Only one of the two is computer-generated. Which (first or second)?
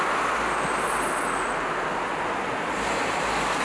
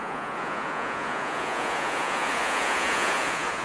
second